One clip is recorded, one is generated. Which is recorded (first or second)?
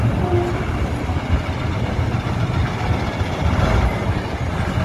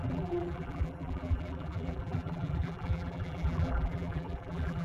first